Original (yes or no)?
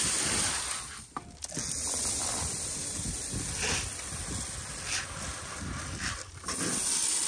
yes